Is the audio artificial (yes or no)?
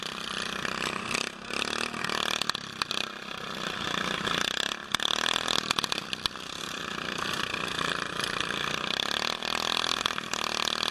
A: no